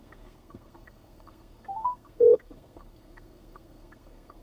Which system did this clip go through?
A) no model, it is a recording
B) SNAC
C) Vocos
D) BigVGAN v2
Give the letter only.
B